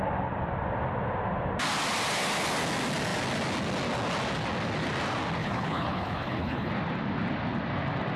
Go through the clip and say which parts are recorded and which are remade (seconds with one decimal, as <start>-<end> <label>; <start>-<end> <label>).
0.0-5.4 recorded; 5.4-6.7 remade; 6.7-8.2 recorded